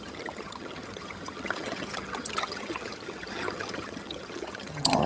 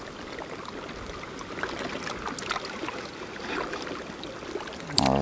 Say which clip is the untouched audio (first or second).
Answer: second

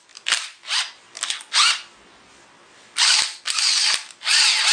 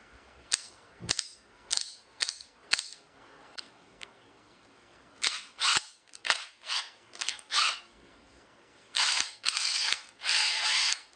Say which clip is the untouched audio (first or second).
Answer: first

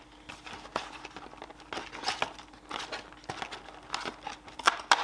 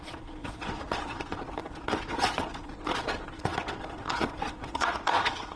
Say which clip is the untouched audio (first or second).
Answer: first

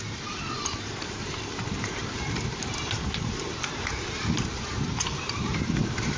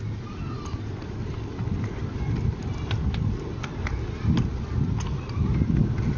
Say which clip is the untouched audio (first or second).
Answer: second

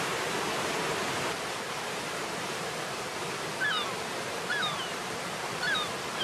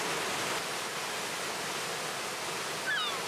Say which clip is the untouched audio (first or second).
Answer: second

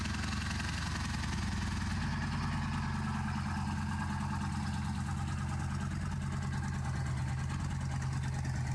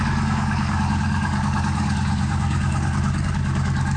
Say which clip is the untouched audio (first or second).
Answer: first